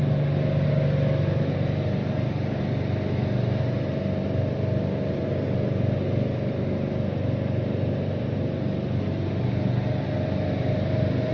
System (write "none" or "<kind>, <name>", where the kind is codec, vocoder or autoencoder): none